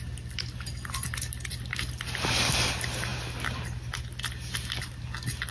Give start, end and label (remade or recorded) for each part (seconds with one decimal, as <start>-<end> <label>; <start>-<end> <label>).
0.0-5.5 recorded